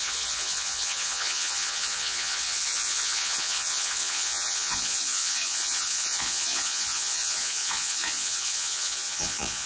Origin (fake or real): fake